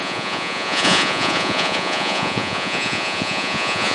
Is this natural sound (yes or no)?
no